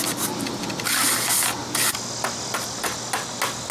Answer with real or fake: real